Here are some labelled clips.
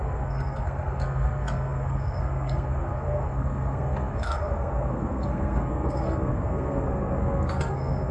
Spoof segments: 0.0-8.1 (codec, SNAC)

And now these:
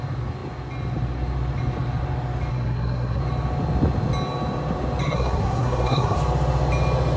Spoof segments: 2.5-3.2 (codec, SNAC); 5.0-6.2

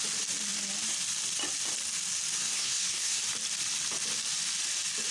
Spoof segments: 2.4-3.2 (codec, SNAC)

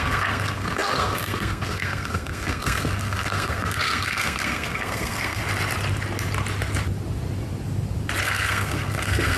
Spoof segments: 0.0-5.4 (codec, SNAC); 8.2-9.4

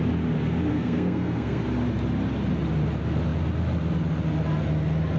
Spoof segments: 0.7-1.6 (codec, SNAC)